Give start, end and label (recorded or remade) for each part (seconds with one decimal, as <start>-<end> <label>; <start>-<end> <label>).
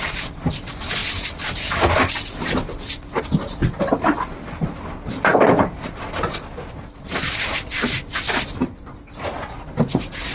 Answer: 0.0-10.3 recorded